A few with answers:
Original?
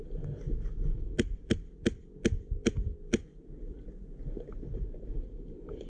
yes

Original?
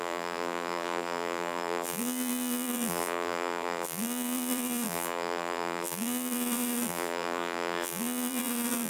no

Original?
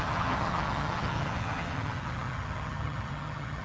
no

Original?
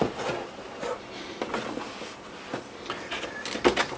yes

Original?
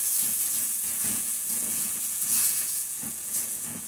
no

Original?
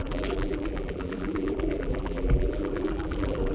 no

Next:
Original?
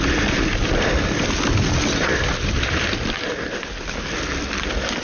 yes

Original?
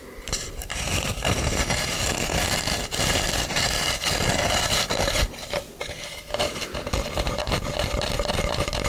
no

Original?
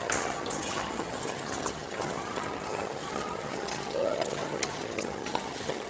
no